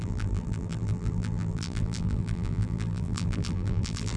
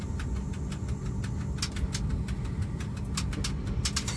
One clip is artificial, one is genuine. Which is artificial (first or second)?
first